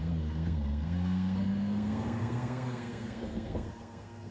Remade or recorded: remade